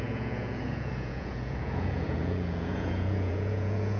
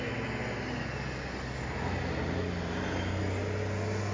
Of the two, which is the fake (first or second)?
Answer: first